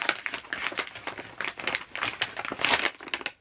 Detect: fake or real real